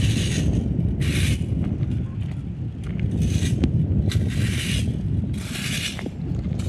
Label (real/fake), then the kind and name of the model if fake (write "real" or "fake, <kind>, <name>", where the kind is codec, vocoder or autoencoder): real